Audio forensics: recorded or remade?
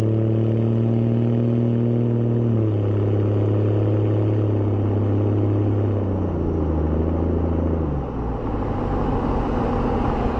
recorded